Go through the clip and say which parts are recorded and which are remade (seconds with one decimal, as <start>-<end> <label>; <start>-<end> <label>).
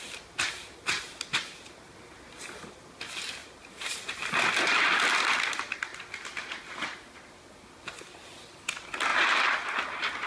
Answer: 0.0-3.4 recorded; 3.4-4.0 remade; 4.0-9.1 recorded; 9.1-9.8 remade; 9.8-10.3 recorded